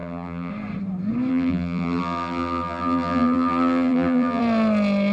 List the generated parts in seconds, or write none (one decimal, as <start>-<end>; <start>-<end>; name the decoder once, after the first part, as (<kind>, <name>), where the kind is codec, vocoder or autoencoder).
0.0-0.5 (vocoder, BigVGAN v2); 1.3-4.4